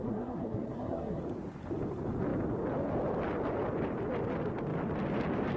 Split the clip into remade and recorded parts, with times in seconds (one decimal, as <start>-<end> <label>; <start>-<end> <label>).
0.0-1.2 remade; 1.2-5.6 recorded